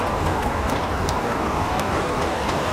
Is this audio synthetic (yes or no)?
yes